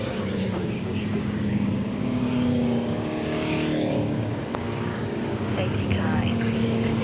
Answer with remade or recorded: remade